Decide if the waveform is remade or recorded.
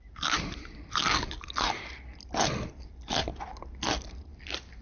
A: recorded